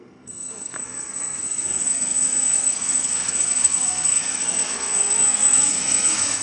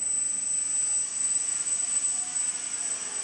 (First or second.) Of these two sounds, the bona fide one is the second